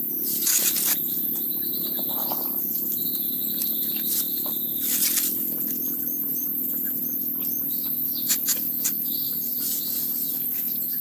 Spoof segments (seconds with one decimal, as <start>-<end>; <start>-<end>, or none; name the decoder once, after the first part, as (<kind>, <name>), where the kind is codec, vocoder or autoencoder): 2.2-6.3 (vocoder, BigVGAN v2)

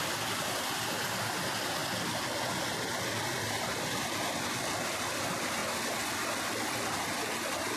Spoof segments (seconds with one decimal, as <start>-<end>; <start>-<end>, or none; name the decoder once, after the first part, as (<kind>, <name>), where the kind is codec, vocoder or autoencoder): none

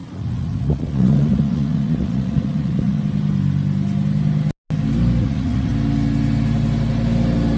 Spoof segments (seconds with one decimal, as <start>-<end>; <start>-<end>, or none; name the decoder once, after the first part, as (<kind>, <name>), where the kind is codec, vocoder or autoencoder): 0.0-3.0 (vocoder, Vocos); 5.2-5.7